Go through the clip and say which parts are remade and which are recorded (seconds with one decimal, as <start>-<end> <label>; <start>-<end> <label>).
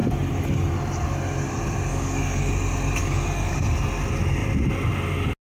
0.0-1.9 recorded; 1.9-2.5 remade; 2.5-3.0 recorded; 3.0-3.5 remade; 3.5-5.6 recorded